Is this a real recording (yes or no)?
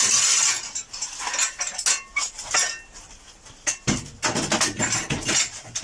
yes